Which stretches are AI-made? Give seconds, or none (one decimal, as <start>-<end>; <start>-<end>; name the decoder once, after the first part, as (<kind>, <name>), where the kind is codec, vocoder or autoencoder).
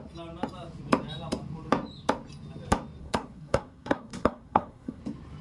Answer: 3.0-5.0 (codec, SNAC)